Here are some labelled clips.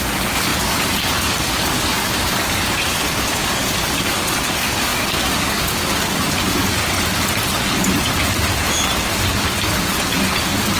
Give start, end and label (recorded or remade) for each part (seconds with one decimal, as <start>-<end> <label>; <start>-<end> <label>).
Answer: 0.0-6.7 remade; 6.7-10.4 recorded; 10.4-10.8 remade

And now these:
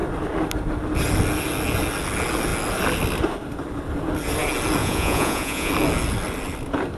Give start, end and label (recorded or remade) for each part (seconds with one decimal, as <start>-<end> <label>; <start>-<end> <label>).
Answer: 0.0-4.8 recorded; 4.8-5.7 remade; 5.7-7.0 recorded

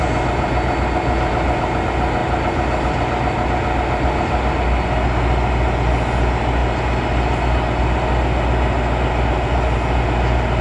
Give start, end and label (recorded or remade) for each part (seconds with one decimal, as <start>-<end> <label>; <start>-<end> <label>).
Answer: 0.0-10.6 recorded